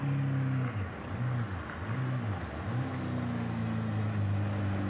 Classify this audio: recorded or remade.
recorded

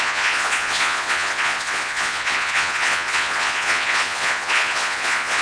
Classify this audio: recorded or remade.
remade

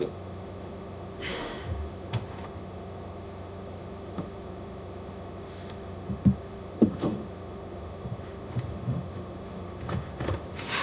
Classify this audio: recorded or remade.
remade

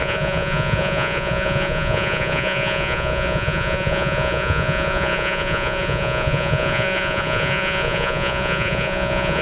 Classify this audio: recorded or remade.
remade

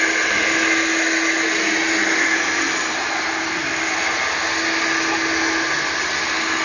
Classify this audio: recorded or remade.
recorded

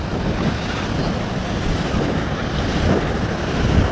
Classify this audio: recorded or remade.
recorded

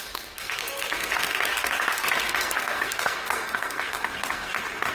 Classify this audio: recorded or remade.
remade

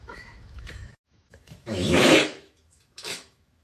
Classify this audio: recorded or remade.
remade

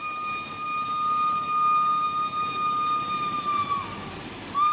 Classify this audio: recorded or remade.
recorded